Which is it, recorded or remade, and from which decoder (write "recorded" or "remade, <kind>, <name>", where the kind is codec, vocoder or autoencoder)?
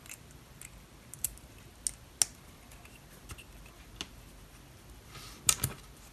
recorded